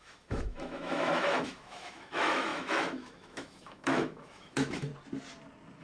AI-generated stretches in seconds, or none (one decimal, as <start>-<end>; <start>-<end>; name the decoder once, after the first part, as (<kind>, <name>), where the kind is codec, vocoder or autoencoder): 0.0-4.9 (autoencoder, DAC-VAE)